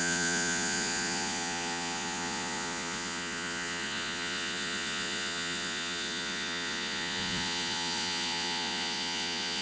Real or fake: fake